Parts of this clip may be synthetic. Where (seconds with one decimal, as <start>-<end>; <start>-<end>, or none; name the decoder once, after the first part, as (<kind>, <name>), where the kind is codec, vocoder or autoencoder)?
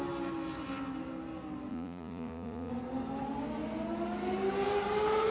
1.7-2.7 (vocoder, Vocos)